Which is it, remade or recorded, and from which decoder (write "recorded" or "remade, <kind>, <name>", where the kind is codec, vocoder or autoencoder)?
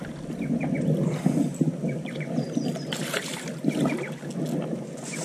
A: recorded